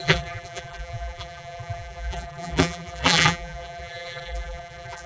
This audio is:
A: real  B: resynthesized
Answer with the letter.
B